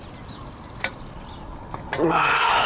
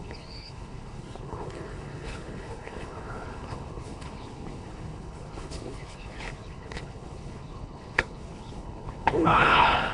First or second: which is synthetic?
second